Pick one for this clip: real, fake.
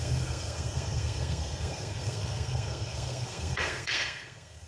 fake